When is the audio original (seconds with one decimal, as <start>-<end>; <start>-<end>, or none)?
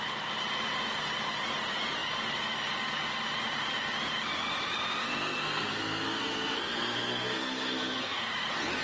0.0-5.0; 8.3-8.8